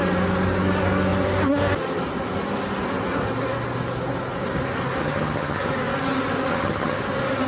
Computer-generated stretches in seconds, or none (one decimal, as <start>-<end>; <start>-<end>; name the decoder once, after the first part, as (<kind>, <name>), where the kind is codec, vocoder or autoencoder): 5.0-5.7 (vocoder, HiFi-GAN); 6.5-7.0